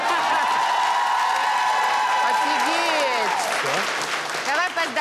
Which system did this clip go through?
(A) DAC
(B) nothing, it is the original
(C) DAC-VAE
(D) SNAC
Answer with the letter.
B